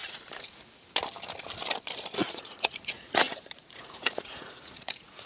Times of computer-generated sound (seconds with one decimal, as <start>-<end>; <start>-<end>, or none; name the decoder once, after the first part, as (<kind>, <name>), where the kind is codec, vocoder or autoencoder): 0.0-0.6 (vocoder, Vocos); 2.2-5.3